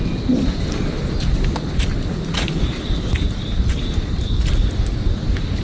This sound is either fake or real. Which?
real